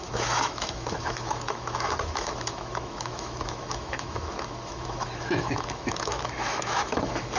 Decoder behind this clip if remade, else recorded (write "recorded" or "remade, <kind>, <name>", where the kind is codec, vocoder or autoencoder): remade, autoencoder, DAC-VAE